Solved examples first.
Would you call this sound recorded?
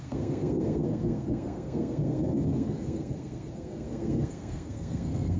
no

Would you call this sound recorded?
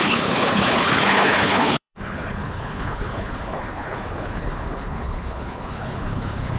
no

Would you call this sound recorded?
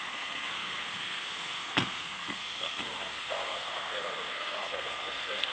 no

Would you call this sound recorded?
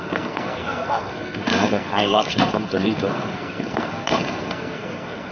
no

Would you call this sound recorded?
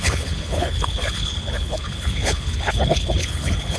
no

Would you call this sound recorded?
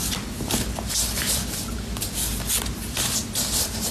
no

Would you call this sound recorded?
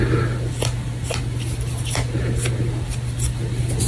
yes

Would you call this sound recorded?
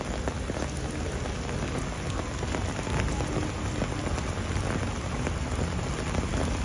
yes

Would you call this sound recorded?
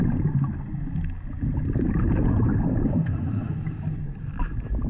yes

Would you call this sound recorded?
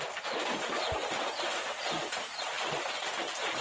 no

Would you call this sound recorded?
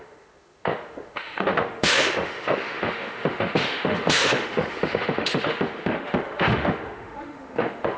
no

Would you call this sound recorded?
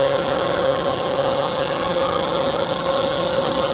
no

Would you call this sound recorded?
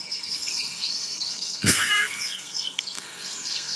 no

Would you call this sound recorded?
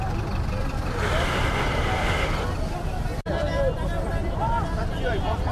no